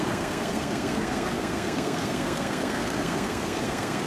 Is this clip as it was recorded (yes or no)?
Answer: no